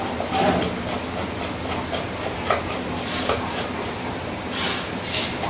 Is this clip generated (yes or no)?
no